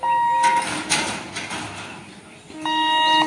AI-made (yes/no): no